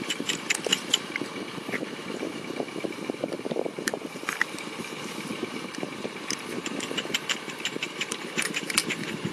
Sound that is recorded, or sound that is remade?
remade